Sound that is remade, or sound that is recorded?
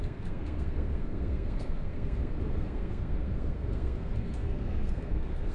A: remade